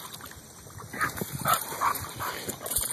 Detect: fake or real real